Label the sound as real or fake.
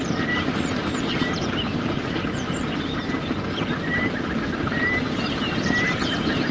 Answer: fake